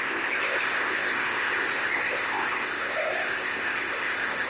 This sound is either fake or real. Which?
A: fake